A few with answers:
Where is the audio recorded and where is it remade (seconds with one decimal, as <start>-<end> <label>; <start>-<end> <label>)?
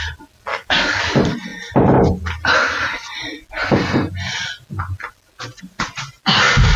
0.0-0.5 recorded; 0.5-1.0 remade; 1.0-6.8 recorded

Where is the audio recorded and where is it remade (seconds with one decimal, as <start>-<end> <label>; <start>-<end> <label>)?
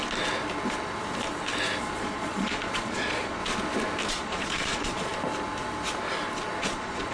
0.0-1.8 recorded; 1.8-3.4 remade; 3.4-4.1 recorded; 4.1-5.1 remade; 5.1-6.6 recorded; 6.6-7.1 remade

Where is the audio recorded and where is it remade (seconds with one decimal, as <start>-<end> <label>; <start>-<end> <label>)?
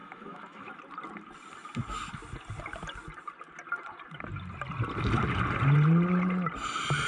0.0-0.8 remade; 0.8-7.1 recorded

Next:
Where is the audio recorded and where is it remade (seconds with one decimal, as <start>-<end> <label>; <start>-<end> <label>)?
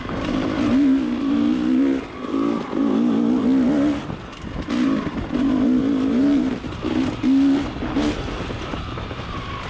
0.0-9.7 recorded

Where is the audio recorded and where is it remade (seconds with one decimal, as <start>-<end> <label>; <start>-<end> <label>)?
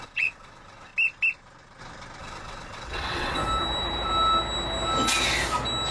0.0-0.9 remade; 0.9-2.2 recorded; 2.2-3.4 remade; 3.4-5.9 recorded